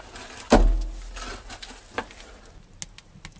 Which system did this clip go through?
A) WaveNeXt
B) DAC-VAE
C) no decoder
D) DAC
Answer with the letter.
C